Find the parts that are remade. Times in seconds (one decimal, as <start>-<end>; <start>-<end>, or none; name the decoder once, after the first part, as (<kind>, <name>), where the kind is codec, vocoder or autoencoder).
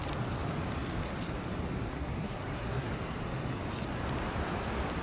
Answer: 1.9-2.9 (codec, SNAC)